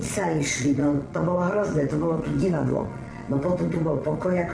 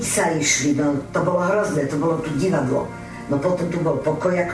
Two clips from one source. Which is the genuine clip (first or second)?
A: second